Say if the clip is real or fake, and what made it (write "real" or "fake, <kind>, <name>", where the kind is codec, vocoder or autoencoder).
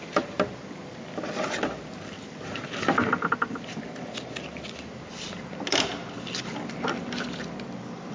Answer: real